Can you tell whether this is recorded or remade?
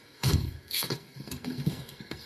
remade